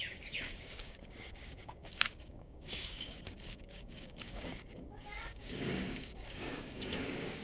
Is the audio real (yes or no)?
no